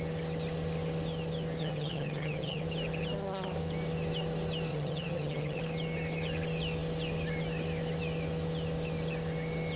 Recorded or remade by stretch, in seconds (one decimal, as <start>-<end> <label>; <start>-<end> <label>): 0.0-1.6 recorded; 1.6-2.6 remade; 2.6-4.7 recorded; 4.7-5.6 remade; 5.6-9.8 recorded